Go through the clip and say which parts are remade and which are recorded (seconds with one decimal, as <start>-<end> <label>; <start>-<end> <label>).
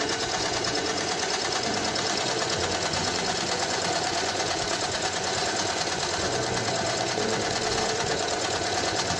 0.0-9.2 remade